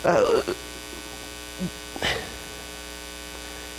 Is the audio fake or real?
real